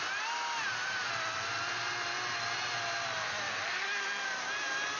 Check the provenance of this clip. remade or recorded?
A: recorded